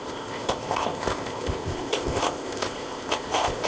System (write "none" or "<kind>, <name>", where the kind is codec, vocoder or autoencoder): codec, ZipCodec